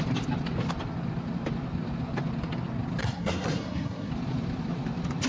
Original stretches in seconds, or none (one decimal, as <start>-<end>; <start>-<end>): 0.0-3.0; 4.1-5.3

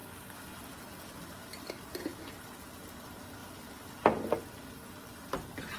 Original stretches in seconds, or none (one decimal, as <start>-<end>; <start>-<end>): 0.0-5.8

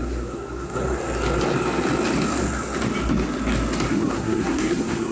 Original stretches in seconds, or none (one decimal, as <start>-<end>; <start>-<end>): 0.8-3.9

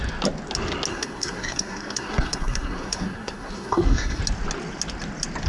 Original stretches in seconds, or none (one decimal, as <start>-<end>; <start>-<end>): 0.0-0.9; 4.2-5.5

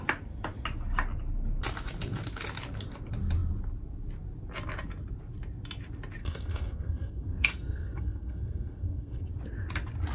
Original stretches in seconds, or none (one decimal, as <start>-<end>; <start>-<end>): 0.0-6.2; 9.2-10.1

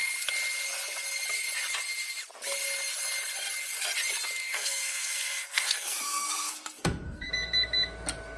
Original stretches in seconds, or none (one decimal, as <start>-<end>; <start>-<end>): 0.0-4.4; 7.3-8.4

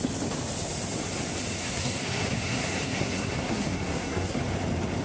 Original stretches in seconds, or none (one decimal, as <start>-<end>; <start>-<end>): 0.0-1.6; 4.4-5.0